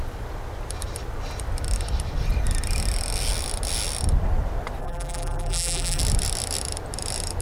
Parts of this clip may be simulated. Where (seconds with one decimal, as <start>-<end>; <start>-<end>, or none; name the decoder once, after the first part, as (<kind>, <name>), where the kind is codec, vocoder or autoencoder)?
4.8-6.0 (vocoder, BigVGAN v2)